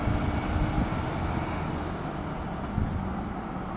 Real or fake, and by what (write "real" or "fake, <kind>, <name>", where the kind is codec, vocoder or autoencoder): real